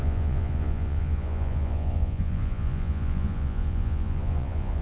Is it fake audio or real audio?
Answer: fake